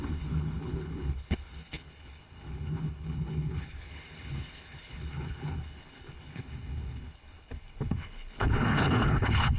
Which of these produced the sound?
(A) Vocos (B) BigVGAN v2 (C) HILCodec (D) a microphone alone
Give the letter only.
C